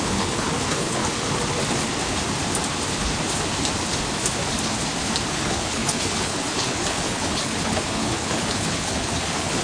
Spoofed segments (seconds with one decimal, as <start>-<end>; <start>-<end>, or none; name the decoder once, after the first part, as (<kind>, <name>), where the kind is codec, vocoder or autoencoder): 0.0-1.0 (codec, HILCodec); 5.3-9.6